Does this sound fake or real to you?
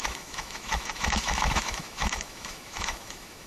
fake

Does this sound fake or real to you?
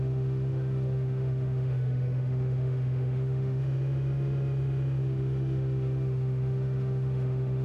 fake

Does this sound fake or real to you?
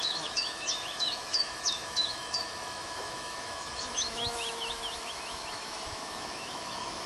fake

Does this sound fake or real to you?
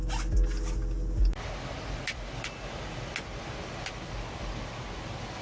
real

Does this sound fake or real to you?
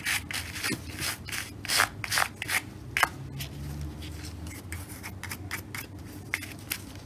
real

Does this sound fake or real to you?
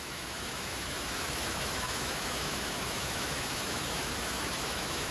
fake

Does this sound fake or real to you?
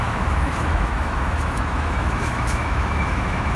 fake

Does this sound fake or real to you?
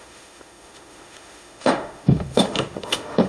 fake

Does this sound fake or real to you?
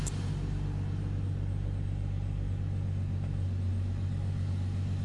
real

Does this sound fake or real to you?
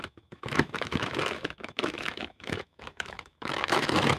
fake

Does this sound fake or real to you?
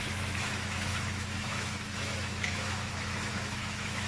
fake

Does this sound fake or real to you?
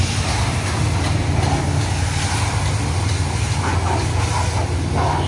real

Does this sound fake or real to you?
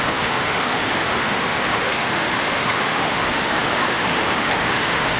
fake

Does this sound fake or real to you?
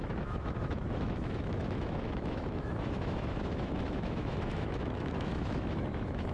fake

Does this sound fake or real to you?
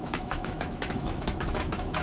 fake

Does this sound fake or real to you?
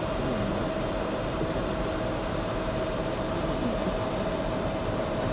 real